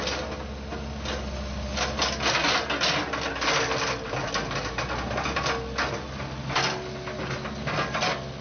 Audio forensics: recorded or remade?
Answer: recorded